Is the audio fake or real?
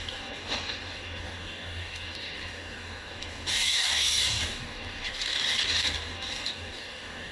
fake